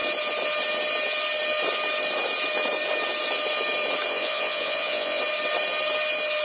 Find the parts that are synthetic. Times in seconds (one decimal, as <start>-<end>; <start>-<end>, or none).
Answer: 4.1-5.2